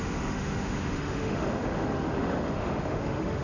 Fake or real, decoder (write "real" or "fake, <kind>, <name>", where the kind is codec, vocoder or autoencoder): fake, autoencoder, DAC-VAE